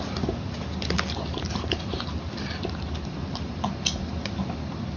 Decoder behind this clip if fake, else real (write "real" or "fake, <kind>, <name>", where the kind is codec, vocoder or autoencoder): real